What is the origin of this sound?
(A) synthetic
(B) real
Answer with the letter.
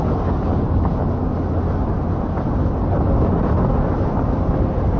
B